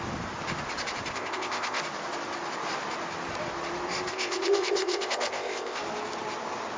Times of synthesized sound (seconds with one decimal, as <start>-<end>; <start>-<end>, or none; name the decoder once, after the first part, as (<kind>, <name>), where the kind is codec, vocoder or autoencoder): 1.1-1.8 (codec, ZipCodec); 4.1-5.8